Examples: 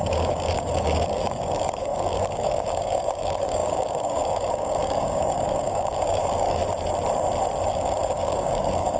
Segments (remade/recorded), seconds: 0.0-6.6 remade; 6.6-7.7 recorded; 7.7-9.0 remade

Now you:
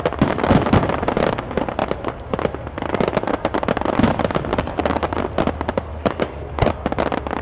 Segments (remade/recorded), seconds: 0.0-4.5 recorded; 4.5-5.2 remade; 5.2-5.9 recorded; 5.9-6.7 remade; 6.7-7.4 recorded

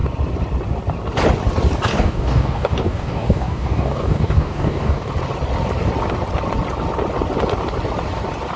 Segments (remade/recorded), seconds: 0.0-1.9 recorded; 1.9-5.1 remade; 5.1-8.6 recorded

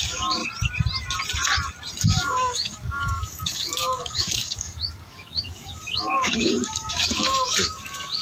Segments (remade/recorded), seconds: 0.0-0.4 remade; 0.4-2.0 recorded; 2.0-8.2 remade

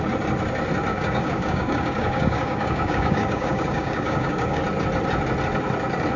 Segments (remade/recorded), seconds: 0.0-0.9 recorded; 0.9-4.6 remade; 4.6-6.2 recorded